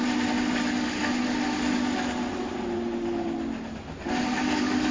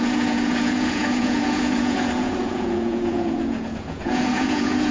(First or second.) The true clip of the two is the first